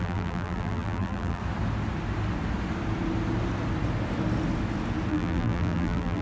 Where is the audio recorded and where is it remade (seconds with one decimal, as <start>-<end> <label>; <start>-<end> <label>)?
0.0-1.4 remade; 1.4-5.1 recorded; 5.1-6.2 remade